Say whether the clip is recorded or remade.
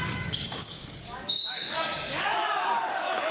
remade